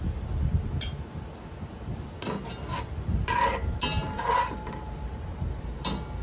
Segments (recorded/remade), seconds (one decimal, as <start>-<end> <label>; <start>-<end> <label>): 0.0-4.0 recorded; 4.0-5.4 remade; 5.4-6.2 recorded